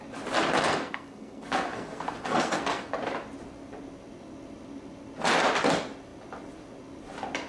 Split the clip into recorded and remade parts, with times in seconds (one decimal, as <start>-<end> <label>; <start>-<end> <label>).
0.0-0.6 recorded; 0.6-2.9 remade; 2.9-7.5 recorded